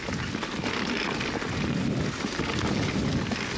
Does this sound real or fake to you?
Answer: real